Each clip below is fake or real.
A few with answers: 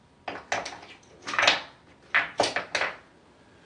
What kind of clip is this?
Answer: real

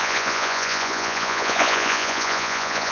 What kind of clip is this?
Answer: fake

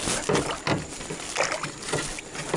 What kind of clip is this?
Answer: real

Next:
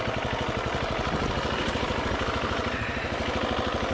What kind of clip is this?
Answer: real